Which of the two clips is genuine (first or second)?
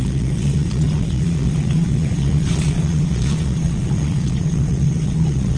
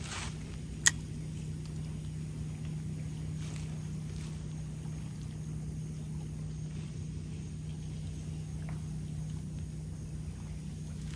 second